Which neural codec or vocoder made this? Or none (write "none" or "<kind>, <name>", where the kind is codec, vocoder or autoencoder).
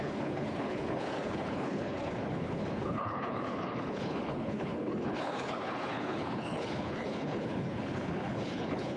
codec, HILCodec